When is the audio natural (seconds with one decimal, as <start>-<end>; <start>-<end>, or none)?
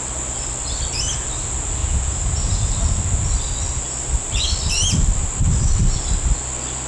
0.0-1.8; 2.7-6.9